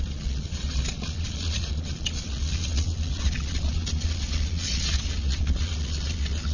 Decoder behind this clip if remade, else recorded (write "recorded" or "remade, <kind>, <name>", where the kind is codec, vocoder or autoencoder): remade, vocoder, Vocos